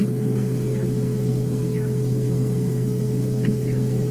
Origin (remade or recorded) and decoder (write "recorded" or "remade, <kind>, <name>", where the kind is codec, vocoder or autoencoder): remade, codec, SNAC